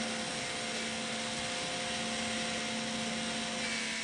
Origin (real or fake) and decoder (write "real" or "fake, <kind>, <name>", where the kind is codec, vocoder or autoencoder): real